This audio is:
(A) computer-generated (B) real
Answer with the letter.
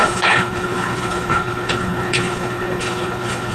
A